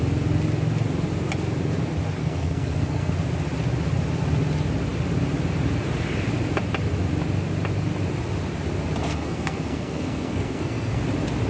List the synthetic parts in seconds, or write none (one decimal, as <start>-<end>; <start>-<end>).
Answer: 2.2-3.1; 9.0-11.0